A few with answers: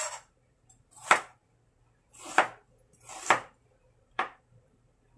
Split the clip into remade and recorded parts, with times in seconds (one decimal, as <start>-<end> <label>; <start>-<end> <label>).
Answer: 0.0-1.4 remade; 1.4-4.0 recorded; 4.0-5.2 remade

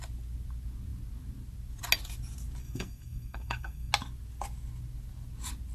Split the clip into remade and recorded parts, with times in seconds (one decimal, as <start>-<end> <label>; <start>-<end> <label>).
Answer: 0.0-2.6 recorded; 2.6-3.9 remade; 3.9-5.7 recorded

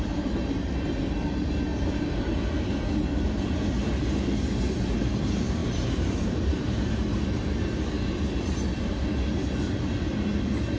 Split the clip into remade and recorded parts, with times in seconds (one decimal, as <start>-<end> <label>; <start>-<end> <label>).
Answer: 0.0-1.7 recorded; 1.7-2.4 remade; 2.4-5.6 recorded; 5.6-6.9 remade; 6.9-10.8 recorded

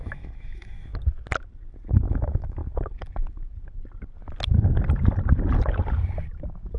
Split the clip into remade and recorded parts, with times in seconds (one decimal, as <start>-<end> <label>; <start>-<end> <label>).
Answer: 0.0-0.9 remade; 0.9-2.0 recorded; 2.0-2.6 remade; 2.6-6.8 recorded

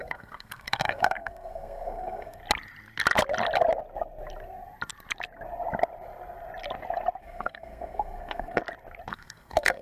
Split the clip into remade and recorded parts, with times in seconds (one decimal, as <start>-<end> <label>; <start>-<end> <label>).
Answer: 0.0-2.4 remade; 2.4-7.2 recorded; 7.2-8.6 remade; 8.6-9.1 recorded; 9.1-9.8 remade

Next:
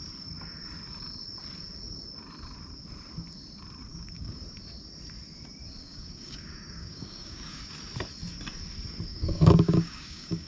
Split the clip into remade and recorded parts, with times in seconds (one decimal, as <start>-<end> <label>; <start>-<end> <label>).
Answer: 0.0-3.9 recorded; 3.9-4.4 remade; 4.4-5.8 recorded; 5.8-7.6 remade; 7.6-9.1 recorded; 9.1-10.5 remade

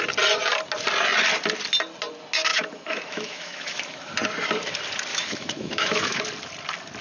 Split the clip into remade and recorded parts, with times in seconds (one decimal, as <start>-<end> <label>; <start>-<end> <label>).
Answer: 0.0-2.5 recorded; 2.5-4.1 remade; 4.1-5.1 recorded; 5.1-6.2 remade; 6.2-7.0 recorded